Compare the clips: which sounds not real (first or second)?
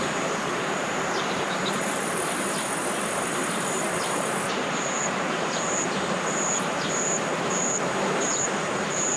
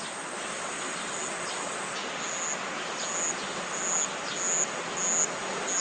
first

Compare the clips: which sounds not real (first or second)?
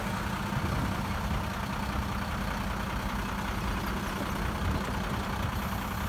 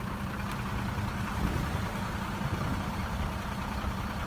second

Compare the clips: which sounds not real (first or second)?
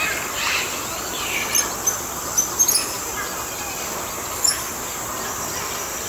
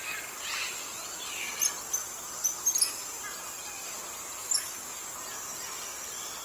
second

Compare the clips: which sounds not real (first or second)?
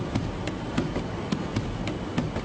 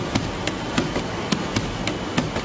first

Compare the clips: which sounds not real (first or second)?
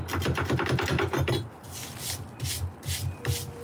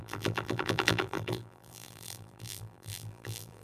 second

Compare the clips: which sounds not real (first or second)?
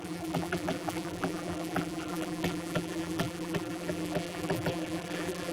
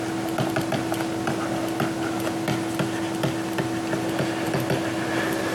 first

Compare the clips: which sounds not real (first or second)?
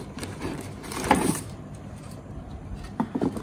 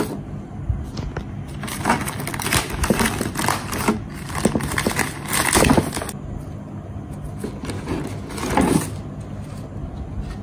first